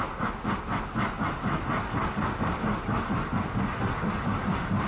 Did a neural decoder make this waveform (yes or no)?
no